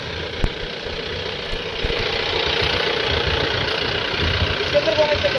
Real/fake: real